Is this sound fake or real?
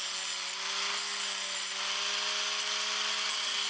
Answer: real